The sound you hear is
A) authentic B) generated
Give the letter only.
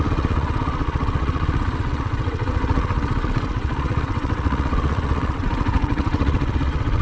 B